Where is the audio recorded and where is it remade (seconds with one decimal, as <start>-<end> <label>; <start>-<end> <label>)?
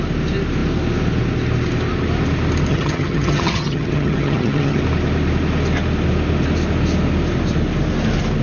0.0-2.7 recorded; 2.7-4.8 remade; 4.8-8.4 recorded